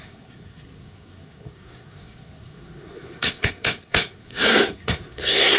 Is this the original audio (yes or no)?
no